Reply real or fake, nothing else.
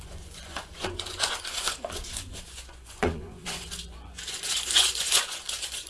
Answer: fake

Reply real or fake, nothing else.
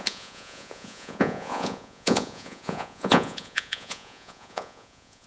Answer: fake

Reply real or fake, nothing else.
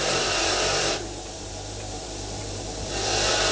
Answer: fake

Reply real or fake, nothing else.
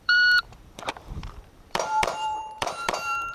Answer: fake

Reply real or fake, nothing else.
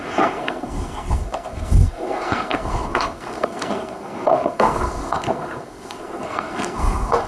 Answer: fake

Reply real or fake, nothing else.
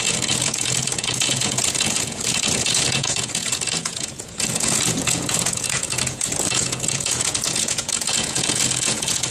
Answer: fake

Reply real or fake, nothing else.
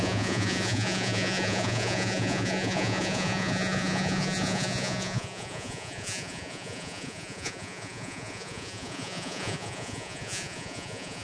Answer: fake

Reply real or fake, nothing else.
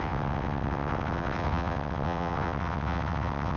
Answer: fake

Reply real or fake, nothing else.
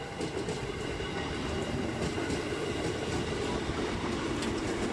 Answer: real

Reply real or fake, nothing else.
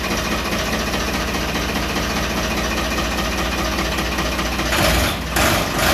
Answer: real